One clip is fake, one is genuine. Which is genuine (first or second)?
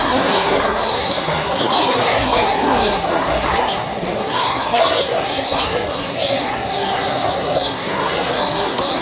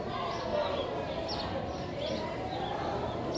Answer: second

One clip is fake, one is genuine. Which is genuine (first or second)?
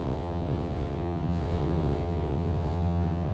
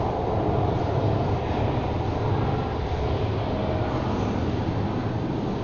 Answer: second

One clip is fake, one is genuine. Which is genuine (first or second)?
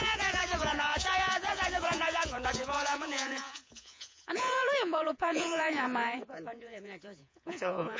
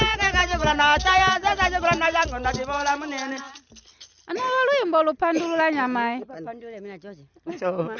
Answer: second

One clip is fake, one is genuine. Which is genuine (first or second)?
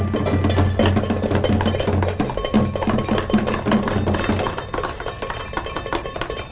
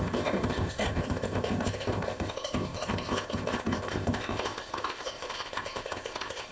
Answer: first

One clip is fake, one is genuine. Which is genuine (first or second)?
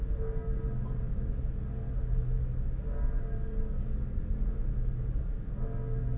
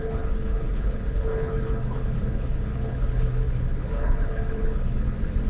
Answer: first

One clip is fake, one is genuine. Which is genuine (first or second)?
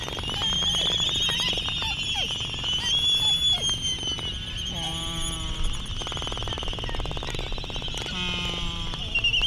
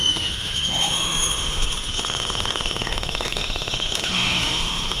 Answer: first